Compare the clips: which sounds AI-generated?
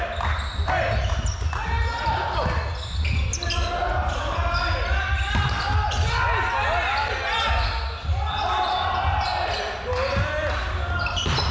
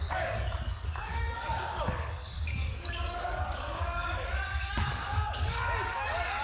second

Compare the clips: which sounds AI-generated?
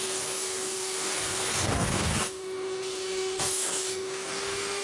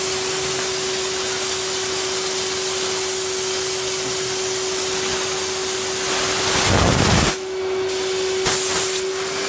first